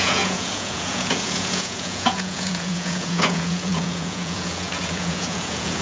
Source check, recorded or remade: remade